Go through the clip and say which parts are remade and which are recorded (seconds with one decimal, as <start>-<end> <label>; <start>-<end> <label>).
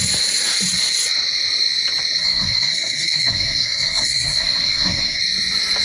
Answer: 0.0-2.2 recorded; 2.2-5.2 remade; 5.2-5.8 recorded